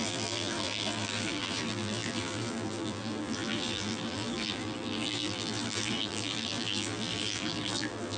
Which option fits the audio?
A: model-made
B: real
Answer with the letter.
A